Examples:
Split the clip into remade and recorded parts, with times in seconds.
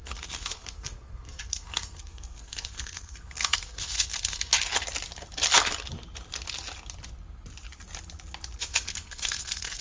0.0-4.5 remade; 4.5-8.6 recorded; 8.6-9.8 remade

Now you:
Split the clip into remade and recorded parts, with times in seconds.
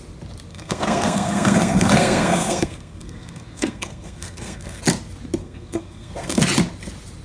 0.0-0.5 recorded; 0.5-4.8 remade; 4.8-5.4 recorded; 5.4-6.4 remade; 6.4-7.2 recorded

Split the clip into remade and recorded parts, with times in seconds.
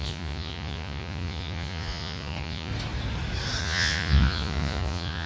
0.0-2.7 remade; 2.7-3.6 recorded; 3.6-5.3 remade